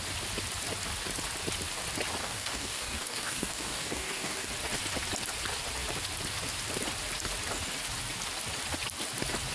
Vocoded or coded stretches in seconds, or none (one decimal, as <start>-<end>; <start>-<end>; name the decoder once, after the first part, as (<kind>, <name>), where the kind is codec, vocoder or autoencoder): 2.2-4.5 (codec, DAC)